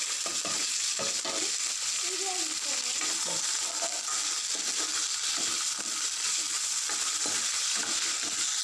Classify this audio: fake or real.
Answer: real